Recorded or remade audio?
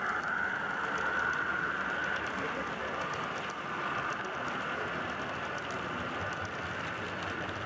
recorded